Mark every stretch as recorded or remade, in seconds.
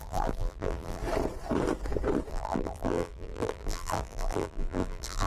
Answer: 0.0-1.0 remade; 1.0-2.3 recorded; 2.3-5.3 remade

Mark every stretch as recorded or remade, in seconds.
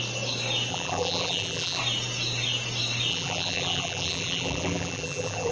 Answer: 0.0-0.7 recorded; 0.7-1.8 remade; 1.8-3.1 recorded; 3.1-5.5 remade